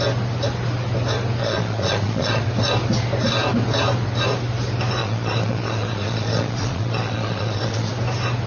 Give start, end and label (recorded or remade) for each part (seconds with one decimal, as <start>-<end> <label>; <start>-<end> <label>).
0.0-1.4 recorded; 1.4-2.4 remade; 2.4-5.0 recorded; 5.0-7.9 remade; 7.9-8.5 recorded